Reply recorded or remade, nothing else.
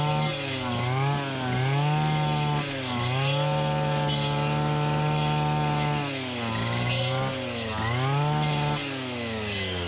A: recorded